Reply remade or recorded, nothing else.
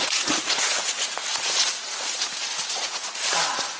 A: remade